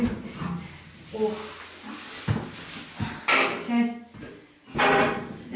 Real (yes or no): yes